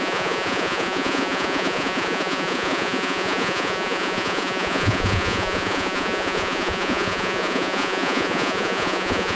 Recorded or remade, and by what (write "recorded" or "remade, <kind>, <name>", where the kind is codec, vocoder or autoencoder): remade, vocoder, Vocos